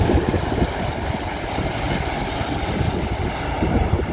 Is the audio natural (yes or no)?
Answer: yes